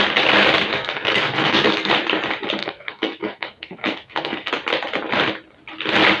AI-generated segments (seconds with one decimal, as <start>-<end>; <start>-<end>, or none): 0.7-1.9; 2.6-4.5